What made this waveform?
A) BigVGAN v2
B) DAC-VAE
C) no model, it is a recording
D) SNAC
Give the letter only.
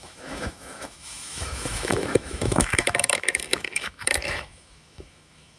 B